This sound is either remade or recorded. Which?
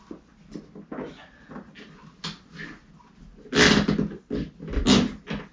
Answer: recorded